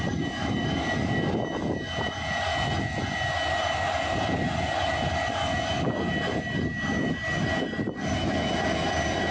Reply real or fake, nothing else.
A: real